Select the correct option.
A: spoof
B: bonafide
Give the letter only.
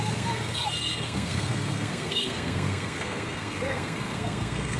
A